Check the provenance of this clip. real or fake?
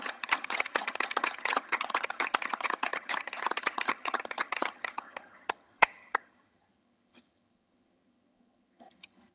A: fake